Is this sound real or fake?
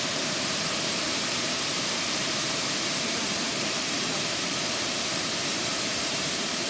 fake